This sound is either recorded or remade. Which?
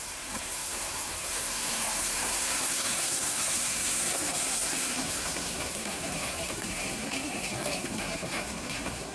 remade